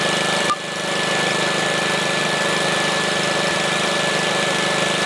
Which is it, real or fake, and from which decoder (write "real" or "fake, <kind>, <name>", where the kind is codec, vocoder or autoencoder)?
fake, vocoder, BigVGAN v2